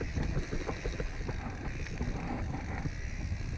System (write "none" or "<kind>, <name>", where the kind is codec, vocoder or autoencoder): none